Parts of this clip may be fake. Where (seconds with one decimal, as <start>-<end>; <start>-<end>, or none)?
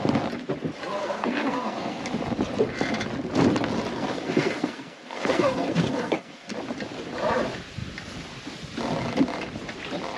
1.0-2.0; 3.9-6.5